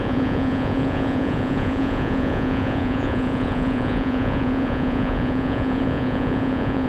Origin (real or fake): fake